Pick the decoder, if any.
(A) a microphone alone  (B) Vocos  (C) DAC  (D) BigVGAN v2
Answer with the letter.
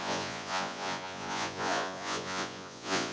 B